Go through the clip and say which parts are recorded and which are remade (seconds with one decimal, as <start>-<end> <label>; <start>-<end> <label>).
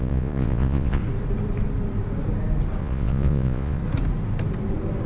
0.0-1.0 remade; 1.0-2.8 recorded; 2.8-3.8 remade; 3.8-5.1 recorded